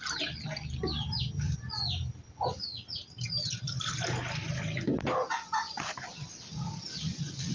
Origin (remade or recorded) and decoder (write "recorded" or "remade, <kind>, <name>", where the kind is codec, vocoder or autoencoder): recorded